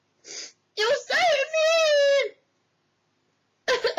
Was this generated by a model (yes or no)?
no